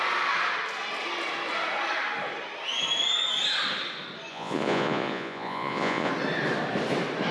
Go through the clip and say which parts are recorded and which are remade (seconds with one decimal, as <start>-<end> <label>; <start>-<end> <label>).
0.0-4.3 recorded; 4.3-6.1 remade; 6.1-7.3 recorded